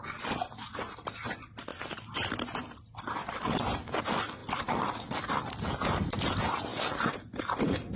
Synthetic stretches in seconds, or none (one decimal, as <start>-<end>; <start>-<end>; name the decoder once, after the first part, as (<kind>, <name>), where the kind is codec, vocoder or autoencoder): none